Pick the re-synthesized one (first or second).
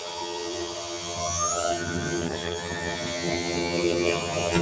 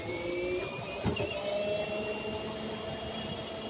first